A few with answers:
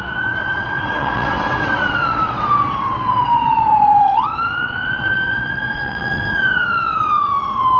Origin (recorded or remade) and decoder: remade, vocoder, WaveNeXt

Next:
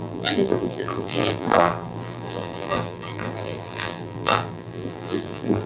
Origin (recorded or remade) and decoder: remade, vocoder, BigVGAN v2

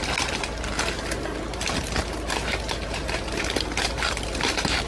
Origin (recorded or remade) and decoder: recorded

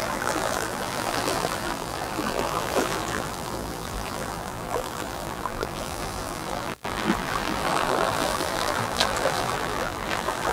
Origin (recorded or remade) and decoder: remade, vocoder, BigVGAN v2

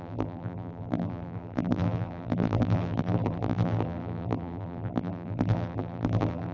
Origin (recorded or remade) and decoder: remade, vocoder, BigVGAN v2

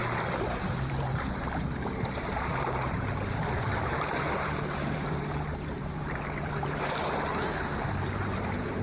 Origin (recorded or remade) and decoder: remade, vocoder, BigVGAN v2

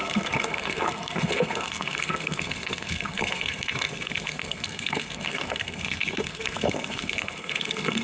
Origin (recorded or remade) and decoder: remade, codec, SNAC